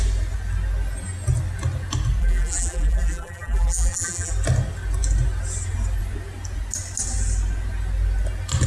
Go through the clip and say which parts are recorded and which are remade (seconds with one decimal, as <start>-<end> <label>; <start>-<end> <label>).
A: 0.0-2.2 recorded; 2.2-4.3 remade; 4.3-8.7 recorded